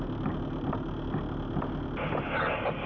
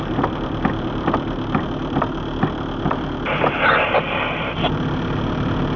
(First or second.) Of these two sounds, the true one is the first